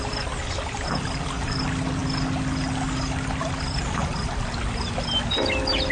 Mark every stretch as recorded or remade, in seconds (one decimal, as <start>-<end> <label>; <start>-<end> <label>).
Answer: 0.0-5.9 recorded